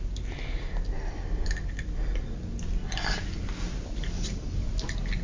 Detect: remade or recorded recorded